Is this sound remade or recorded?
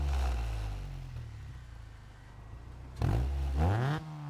recorded